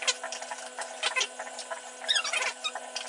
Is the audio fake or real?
real